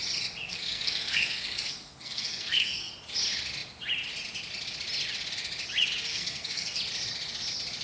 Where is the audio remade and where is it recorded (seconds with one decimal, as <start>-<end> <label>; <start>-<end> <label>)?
0.0-0.4 recorded; 0.4-2.9 remade; 2.9-6.1 recorded; 6.1-6.8 remade; 6.8-7.8 recorded